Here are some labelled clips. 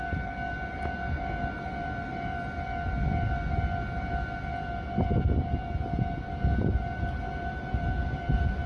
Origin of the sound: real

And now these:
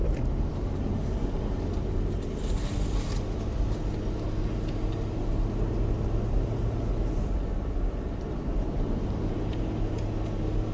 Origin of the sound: real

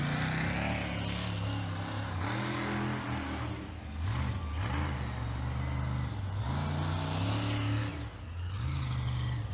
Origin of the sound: real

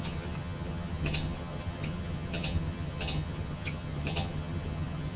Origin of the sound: fake